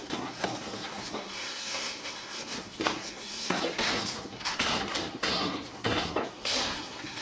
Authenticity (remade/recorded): remade